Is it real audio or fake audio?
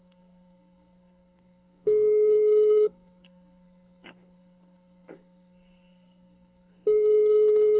fake